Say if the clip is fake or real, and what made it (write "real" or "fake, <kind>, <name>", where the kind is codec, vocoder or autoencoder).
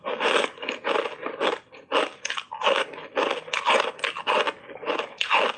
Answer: real